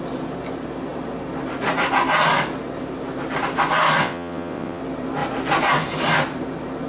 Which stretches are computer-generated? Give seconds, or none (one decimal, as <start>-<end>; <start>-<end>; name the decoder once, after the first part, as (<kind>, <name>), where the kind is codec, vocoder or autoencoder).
4.0-4.8 (vocoder, WaveNeXt)